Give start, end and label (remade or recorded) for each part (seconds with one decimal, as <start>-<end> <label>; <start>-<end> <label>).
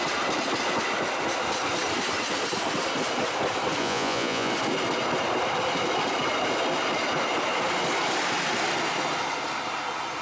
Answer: 0.0-3.8 recorded; 3.8-4.5 remade; 4.5-10.2 recorded